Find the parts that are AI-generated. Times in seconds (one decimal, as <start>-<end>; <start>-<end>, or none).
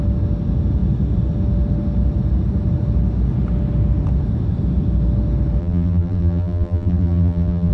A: 5.6-7.7